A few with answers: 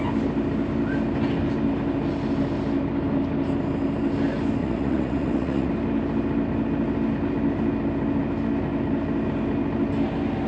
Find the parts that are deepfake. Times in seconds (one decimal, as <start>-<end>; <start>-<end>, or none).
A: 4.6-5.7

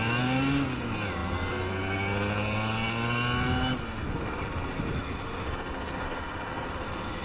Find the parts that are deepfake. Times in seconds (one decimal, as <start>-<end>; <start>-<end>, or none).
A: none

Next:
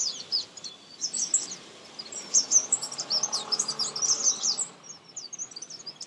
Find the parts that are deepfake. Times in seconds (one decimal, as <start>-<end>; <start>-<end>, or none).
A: none